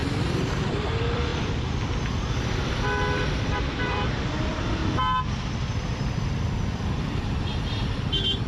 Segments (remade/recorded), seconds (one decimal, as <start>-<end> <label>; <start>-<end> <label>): 0.0-4.8 remade; 4.8-5.3 recorded; 5.3-8.5 remade